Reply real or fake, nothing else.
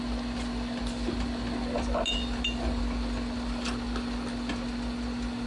real